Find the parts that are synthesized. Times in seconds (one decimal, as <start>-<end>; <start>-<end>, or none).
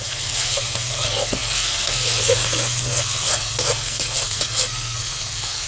0.0-5.7